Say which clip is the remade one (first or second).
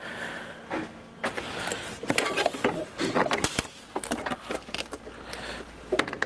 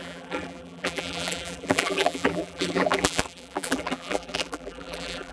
second